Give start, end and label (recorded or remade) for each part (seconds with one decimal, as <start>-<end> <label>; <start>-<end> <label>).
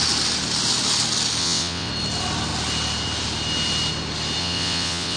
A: 0.0-1.4 recorded; 1.4-1.9 remade; 1.9-4.4 recorded; 4.4-5.2 remade